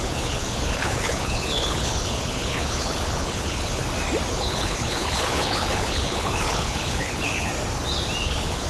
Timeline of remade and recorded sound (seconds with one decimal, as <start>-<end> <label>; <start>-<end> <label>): 0.0-3.8 remade; 3.8-4.3 recorded; 4.3-7.5 remade; 7.5-8.2 recorded; 8.2-8.7 remade